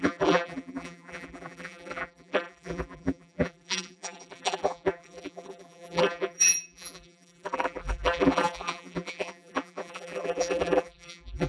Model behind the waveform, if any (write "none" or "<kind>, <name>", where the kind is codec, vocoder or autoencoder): vocoder, BigVGAN v2